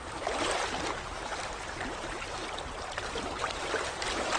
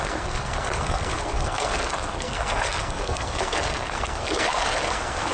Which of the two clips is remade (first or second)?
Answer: second